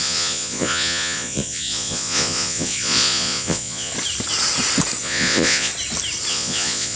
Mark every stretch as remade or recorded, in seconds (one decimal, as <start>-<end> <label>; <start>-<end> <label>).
0.0-3.9 remade; 3.9-5.0 recorded; 5.0-5.7 remade; 5.7-6.3 recorded; 6.3-7.0 remade